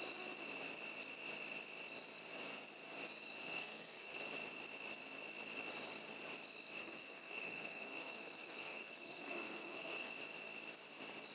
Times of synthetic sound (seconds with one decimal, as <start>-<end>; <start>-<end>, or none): 3.4-4.2; 6.8-10.1